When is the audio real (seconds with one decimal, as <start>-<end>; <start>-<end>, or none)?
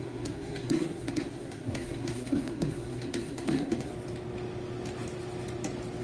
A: 3.9-6.0